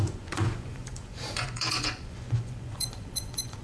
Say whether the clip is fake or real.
fake